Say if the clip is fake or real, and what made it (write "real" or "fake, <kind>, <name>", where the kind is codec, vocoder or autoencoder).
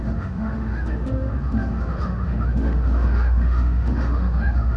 fake, autoencoder, DAC-VAE